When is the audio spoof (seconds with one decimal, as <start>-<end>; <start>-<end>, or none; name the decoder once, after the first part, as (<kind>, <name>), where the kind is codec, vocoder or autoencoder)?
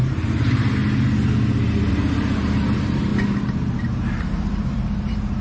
0.0-0.8 (vocoder, BigVGAN v2); 1.9-3.1; 3.8-5.4